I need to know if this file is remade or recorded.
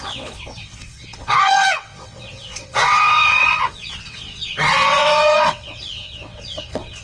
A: remade